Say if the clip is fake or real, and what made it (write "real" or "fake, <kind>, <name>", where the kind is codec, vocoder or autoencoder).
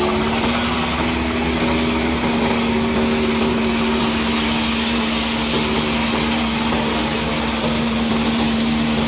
real